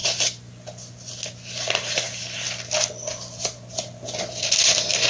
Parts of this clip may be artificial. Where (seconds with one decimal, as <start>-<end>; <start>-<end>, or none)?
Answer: none